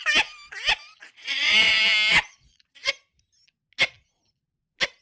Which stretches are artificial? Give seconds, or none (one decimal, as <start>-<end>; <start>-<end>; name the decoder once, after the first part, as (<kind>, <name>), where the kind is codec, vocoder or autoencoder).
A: 0.9-1.7 (vocoder, Vocos); 2.1-2.9